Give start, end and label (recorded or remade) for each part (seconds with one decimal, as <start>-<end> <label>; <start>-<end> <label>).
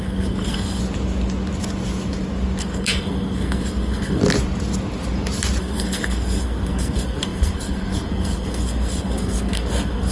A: 0.0-0.8 remade; 0.8-2.6 recorded; 2.6-4.2 remade; 4.2-5.6 recorded; 5.6-10.1 remade